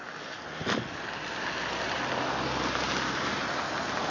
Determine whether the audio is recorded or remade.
recorded